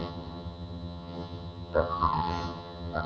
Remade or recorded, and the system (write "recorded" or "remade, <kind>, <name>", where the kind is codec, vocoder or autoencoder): remade, vocoder, HiFi-GAN